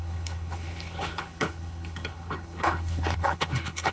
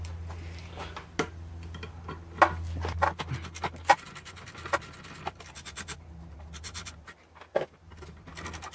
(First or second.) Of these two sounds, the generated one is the first